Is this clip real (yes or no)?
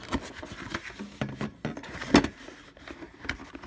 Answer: yes